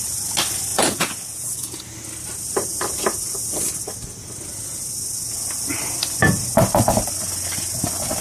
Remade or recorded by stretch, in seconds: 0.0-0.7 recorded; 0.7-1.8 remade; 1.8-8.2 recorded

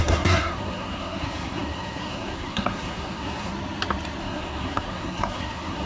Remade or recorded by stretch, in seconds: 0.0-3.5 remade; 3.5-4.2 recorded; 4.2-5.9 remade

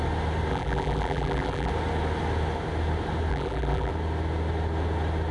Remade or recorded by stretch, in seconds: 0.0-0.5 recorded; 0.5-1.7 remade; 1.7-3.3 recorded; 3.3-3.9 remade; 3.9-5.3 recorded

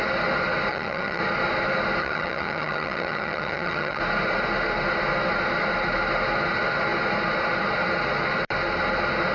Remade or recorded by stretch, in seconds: 0.0-0.7 recorded; 0.7-1.2 remade; 1.2-2.0 recorded; 2.0-4.0 remade; 4.0-9.3 recorded